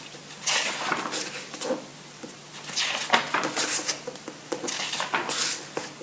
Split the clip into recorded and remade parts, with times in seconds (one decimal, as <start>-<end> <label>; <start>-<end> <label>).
0.0-1.9 recorded; 1.9-4.8 remade; 4.8-6.0 recorded